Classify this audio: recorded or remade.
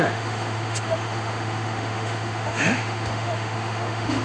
remade